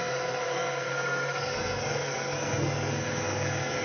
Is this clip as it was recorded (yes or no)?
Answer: no